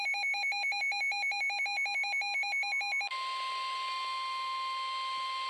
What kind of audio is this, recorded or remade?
recorded